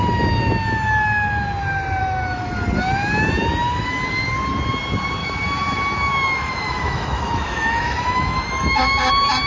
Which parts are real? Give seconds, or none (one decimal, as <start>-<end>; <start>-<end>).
0.0-2.0; 2.6-5.2; 9.1-9.5

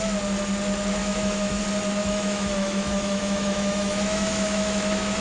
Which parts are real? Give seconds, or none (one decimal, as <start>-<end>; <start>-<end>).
0.0-1.0; 1.6-2.0

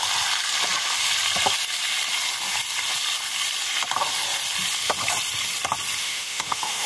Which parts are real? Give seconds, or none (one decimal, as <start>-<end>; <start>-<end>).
0.0-6.0

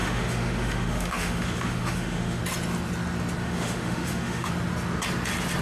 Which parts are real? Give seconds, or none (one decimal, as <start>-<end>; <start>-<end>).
2.4-3.4; 4.5-5.6

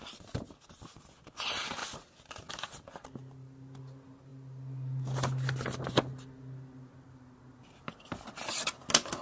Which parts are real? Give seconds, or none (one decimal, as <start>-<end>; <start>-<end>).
0.0-9.2

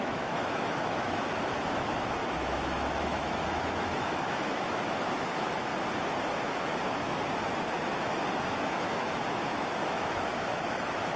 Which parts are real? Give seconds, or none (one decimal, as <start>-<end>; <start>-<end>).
5.7-6.3; 6.7-7.7